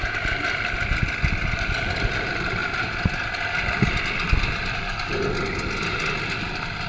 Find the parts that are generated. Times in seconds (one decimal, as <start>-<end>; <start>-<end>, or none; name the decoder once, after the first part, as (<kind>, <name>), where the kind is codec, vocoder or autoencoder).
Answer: none